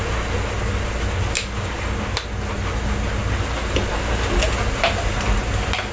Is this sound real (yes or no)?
yes